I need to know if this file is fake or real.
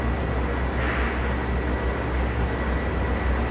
real